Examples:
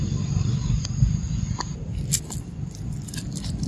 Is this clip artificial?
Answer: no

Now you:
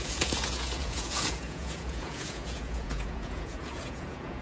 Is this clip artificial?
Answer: yes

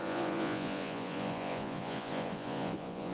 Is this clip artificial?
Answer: yes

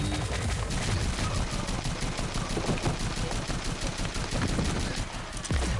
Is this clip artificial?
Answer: no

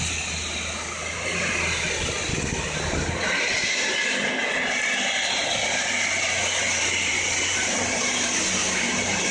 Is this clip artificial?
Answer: no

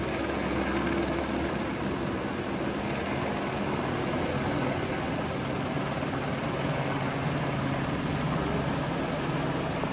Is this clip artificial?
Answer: no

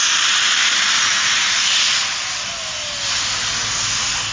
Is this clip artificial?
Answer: no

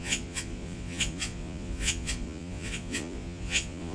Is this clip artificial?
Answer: yes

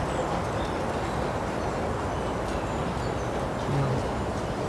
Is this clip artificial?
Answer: no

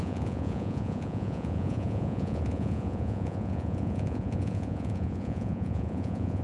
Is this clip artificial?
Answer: yes